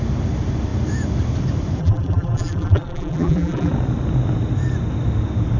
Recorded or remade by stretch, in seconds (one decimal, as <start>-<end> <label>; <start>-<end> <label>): 0.0-1.8 recorded; 1.8-3.7 remade; 3.7-5.6 recorded